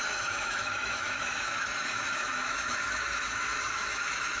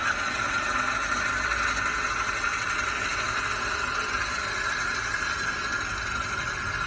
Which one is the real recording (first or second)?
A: second